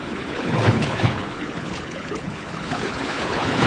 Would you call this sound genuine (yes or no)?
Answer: no